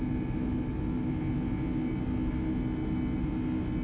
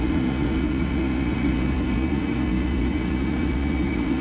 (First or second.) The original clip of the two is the first